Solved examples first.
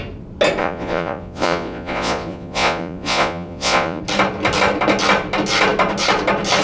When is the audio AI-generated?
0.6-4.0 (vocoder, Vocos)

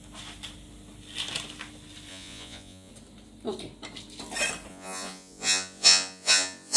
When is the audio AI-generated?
2.1-2.9 (vocoder, Vocos); 4.7-6.8

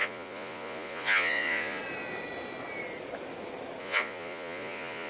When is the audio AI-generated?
0.0-1.8 (vocoder, Vocos); 3.8-5.1

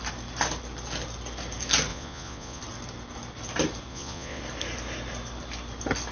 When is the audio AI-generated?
1.9-2.6 (vocoder, Vocos); 3.9-4.4